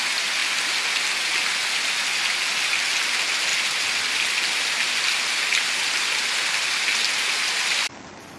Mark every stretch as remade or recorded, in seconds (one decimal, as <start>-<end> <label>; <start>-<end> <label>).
0.0-8.4 recorded